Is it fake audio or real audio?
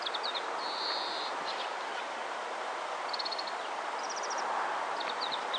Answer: real